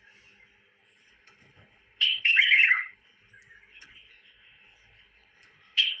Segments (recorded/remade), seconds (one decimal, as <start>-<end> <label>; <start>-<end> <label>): 0.0-0.8 recorded; 0.8-3.3 remade; 3.3-3.7 recorded; 3.7-6.0 remade